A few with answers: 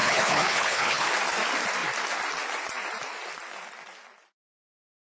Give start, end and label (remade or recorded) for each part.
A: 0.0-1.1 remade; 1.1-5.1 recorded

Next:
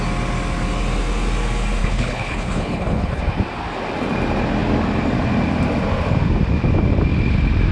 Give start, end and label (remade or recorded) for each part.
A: 0.0-1.8 recorded; 1.8-3.2 remade; 3.2-7.7 recorded

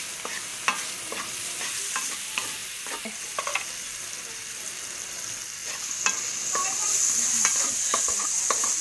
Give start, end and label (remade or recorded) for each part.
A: 0.0-8.8 recorded

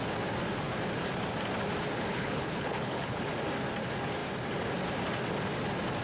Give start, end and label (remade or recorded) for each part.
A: 0.0-2.1 recorded; 2.1-3.3 remade; 3.3-6.0 recorded

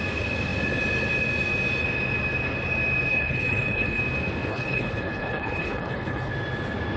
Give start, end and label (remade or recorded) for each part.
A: 0.0-3.1 recorded; 3.1-4.0 remade; 4.0-4.5 recorded; 4.5-6.3 remade; 6.3-7.0 recorded

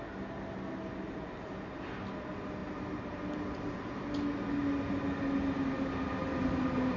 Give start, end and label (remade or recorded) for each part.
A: 0.0-7.0 recorded

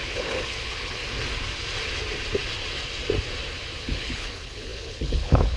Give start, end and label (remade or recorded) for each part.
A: 0.0-1.0 remade; 1.0-3.8 recorded; 3.8-5.6 remade